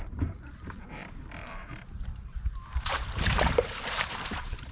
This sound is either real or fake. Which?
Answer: fake